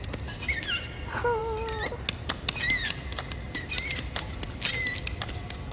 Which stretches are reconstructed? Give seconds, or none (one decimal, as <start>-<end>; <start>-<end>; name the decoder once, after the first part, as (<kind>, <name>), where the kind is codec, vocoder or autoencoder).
none